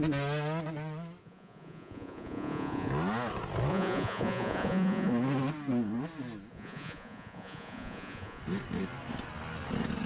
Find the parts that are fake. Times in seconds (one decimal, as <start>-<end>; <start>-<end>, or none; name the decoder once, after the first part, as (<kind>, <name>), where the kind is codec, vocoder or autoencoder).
1.2-2.9 (vocoder, Vocos); 3.7-5.1; 6.5-8.4